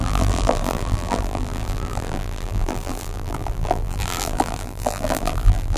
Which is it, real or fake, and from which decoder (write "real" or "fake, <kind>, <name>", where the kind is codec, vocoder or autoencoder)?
fake, vocoder, BigVGAN v2